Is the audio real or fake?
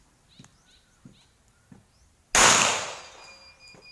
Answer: real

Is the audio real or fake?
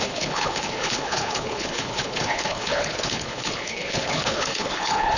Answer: fake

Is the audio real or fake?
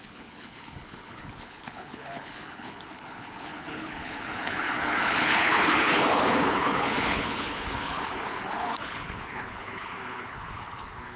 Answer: fake